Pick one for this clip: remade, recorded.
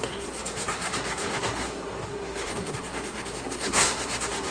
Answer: remade